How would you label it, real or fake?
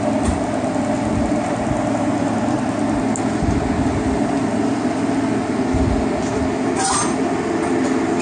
real